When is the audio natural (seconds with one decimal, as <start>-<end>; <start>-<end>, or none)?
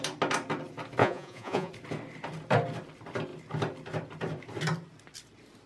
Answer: 0.0-1.0; 1.7-5.7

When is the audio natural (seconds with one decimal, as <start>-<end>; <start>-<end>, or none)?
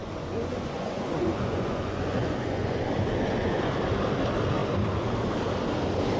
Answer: 3.7-6.2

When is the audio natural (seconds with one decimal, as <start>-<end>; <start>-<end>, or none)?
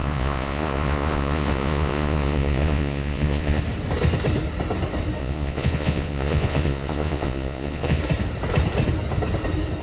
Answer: 3.6-5.2; 8.0-9.8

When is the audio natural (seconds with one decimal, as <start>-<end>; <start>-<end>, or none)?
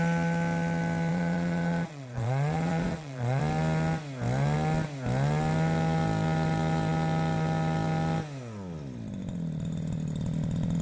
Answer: 0.0-1.1; 3.4-10.8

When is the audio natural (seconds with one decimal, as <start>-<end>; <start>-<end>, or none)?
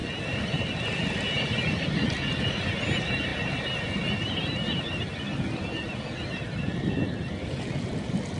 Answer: 0.0-8.4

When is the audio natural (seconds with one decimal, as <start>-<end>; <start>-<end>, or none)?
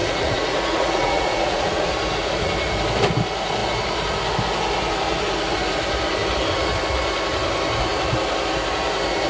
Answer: 1.9-9.3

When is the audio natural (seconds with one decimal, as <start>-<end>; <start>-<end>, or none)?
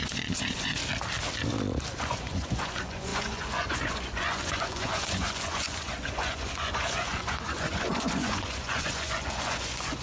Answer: 0.8-1.9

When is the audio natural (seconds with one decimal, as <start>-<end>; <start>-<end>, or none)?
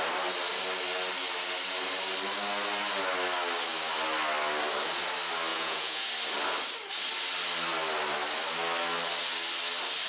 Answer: 0.0-5.5; 6.1-10.1